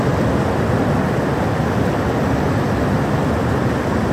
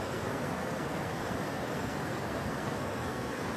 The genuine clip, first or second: first